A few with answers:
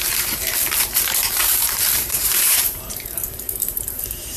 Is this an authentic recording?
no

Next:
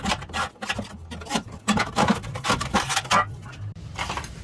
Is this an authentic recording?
yes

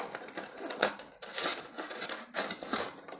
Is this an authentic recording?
yes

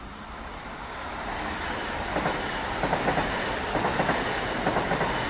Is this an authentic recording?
yes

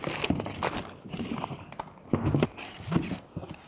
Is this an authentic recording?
yes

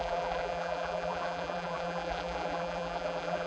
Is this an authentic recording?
no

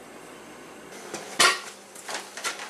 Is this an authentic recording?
no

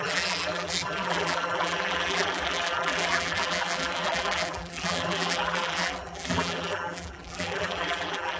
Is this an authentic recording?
no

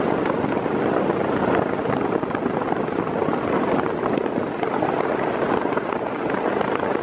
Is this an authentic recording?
yes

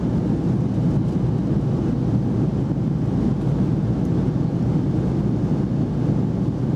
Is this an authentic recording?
yes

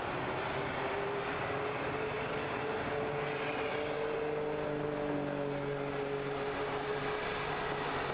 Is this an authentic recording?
yes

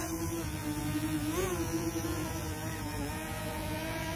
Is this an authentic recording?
no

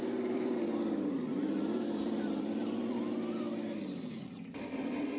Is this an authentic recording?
yes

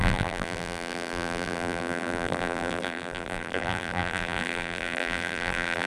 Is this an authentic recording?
no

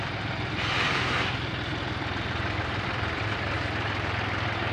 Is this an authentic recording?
no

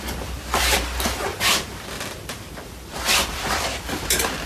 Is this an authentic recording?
no